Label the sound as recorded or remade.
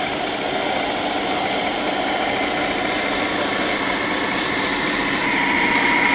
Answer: recorded